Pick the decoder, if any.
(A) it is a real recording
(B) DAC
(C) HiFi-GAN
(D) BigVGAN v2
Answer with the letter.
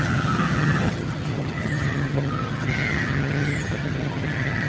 C